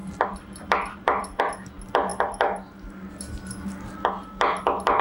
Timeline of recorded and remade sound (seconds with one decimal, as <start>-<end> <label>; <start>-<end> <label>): 0.0-1.4 remade; 1.4-5.0 recorded